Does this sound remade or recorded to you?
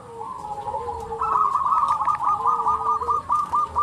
recorded